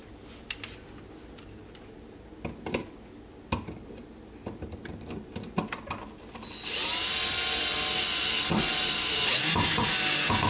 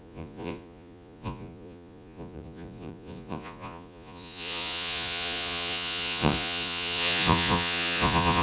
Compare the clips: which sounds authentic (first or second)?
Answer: first